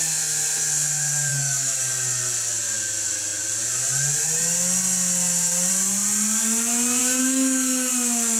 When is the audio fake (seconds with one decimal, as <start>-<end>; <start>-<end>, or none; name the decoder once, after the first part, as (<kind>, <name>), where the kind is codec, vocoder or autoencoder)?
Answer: 1.3-1.9 (codec, DAC); 7.0-7.9